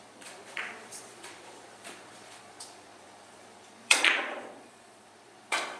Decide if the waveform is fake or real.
fake